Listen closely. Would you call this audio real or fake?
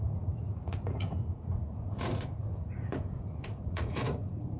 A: fake